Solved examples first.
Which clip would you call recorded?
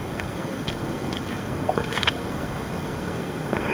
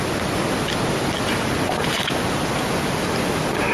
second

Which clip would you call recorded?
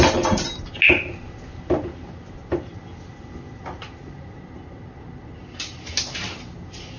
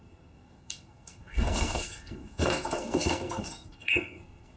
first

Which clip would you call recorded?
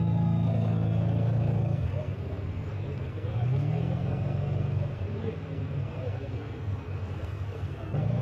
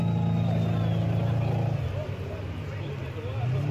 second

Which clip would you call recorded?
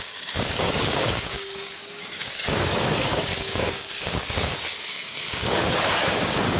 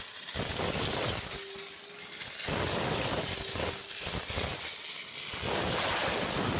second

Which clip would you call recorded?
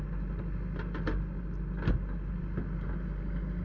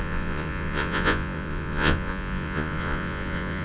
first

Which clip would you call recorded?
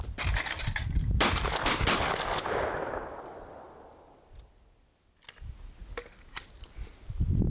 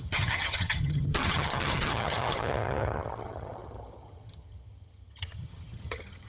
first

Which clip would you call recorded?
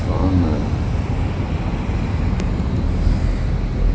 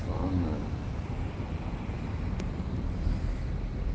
first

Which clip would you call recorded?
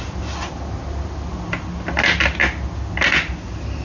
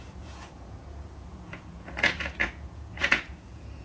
first